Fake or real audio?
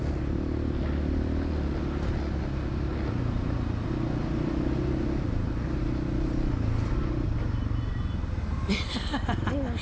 real